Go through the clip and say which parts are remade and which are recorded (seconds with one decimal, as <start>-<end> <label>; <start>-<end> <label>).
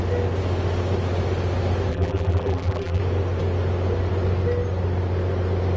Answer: 0.0-1.9 recorded; 1.9-3.0 remade; 3.0-5.8 recorded